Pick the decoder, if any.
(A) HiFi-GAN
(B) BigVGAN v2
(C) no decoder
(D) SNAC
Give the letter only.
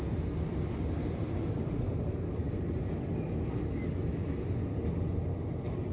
C